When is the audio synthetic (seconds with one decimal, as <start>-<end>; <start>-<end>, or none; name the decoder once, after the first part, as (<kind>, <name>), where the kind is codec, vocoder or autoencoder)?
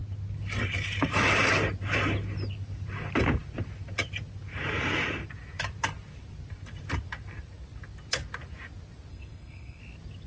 9.1-9.8 (codec, SNAC)